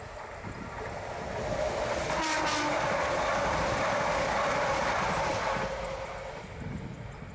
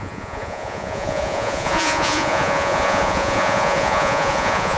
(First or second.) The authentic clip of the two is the first